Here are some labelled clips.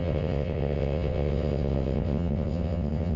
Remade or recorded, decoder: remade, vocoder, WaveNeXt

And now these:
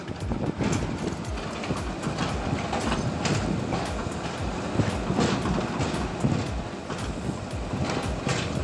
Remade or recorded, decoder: recorded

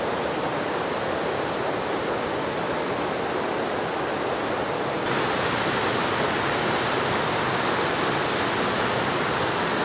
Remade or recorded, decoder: recorded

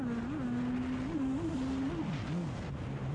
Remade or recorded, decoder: recorded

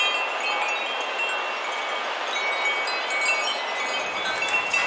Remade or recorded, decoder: recorded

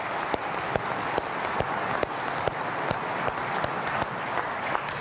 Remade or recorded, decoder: recorded